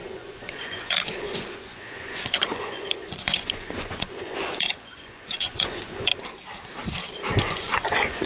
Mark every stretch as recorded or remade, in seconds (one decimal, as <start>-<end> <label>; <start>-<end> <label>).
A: 0.0-6.1 remade; 6.1-7.4 recorded; 7.4-8.3 remade